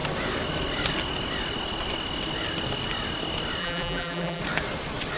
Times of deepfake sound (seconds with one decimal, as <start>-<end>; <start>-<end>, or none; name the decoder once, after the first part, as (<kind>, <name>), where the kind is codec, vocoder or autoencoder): 3.6-4.4 (vocoder, BigVGAN v2)